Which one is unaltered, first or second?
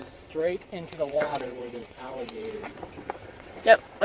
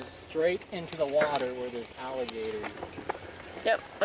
second